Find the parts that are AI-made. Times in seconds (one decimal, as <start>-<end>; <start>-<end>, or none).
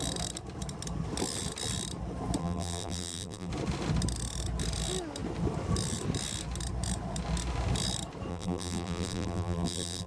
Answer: 2.4-3.5; 8.3-10.1